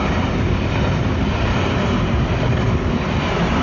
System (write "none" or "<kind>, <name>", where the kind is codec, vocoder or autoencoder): none